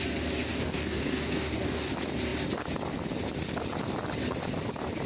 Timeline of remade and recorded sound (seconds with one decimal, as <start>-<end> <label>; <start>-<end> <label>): 0.0-0.5 recorded; 0.5-1.9 remade; 1.9-5.1 recorded